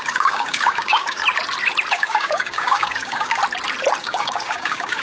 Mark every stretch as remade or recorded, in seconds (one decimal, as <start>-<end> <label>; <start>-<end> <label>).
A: 0.0-1.2 remade; 1.2-1.9 recorded; 1.9-3.4 remade; 3.4-4.0 recorded; 4.0-5.0 remade